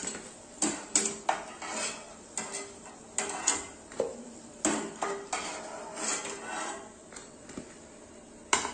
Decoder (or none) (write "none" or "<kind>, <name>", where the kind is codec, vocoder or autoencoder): none